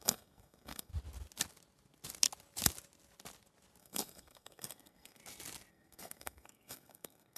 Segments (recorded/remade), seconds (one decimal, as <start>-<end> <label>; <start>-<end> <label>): 0.0-0.9 remade; 0.9-3.8 recorded; 3.8-5.2 remade; 5.2-5.7 recorded; 5.7-7.4 remade